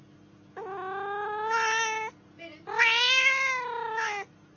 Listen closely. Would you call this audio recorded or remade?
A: recorded